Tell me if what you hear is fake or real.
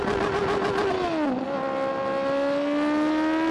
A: real